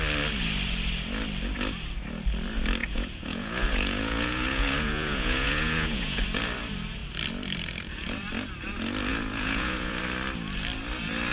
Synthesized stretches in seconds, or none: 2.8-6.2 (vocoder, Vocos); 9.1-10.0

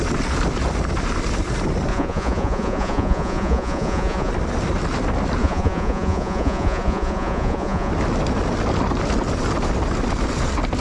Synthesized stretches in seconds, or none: 1.9-4.3 (vocoder, Vocos); 5.4-7.9

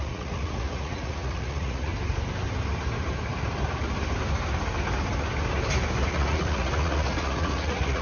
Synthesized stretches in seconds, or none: 0.0-1.9 (vocoder, Vocos); 6.1-8.0

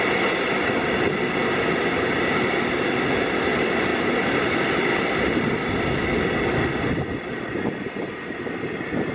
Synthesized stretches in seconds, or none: none

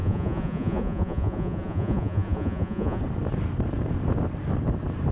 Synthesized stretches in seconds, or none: 0.0-3.0 (vocoder, Vocos)

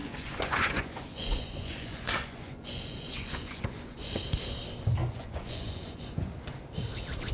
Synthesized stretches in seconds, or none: 0.0-4.2 (vocoder, Vocos); 5.0-6.3

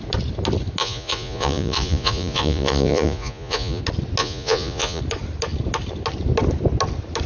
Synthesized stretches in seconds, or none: 0.8-3.8 (vocoder, Vocos); 4.2-5.0

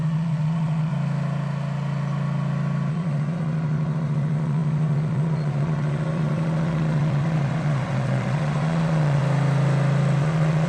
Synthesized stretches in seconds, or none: 0.0-0.9 (vocoder, Vocos); 2.9-9.2; 10.2-10.7